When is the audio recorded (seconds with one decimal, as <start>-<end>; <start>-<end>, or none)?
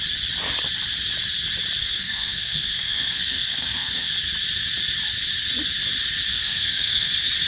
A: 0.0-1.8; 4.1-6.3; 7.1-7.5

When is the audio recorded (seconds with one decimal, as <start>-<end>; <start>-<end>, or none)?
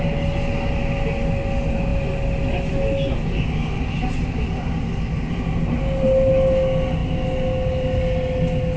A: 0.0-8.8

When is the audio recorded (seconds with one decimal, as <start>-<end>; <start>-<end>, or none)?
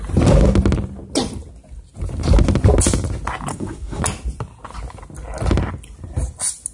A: 0.0-3.5; 4.0-6.7